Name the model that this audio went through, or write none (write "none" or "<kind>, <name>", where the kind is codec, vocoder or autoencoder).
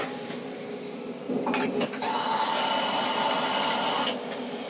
none